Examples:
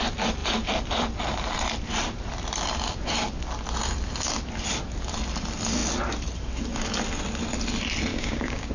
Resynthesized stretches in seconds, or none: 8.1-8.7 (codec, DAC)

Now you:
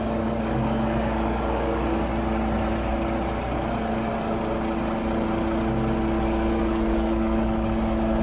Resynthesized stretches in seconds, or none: 0.0-2.1 (codec, DAC); 6.2-8.2

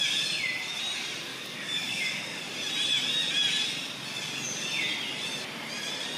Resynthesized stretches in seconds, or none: 1.3-2.4 (codec, DAC)

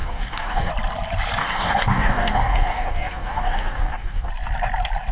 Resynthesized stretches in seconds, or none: 0.0-0.7 (codec, DAC); 1.4-4.3

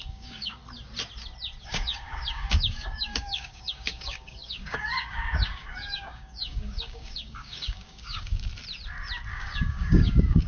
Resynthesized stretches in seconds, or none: 0.0-0.6 (codec, DAC); 1.6-8.5; 9.3-10.5

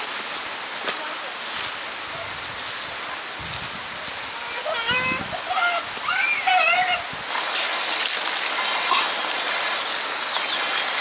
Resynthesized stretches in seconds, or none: none

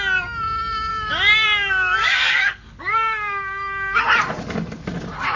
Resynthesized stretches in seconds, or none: 0.9-4.0 (codec, DAC)